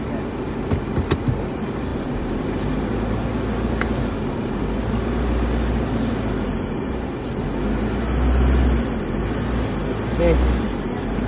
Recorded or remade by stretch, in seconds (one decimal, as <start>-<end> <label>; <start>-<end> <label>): 0.0-11.3 recorded